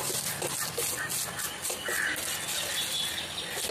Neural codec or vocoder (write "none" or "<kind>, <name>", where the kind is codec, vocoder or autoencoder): none